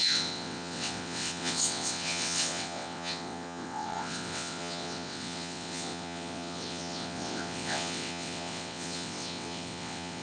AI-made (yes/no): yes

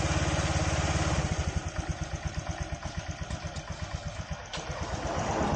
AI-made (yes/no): no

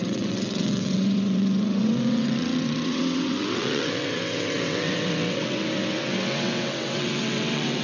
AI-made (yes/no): yes